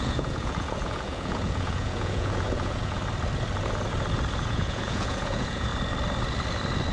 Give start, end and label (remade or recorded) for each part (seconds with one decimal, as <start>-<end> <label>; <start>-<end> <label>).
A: 0.0-3.0 remade; 3.0-4.5 recorded; 4.5-5.7 remade; 5.7-6.9 recorded